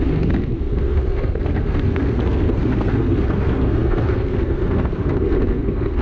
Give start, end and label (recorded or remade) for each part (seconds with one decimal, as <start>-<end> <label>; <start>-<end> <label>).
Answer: 0.0-6.0 remade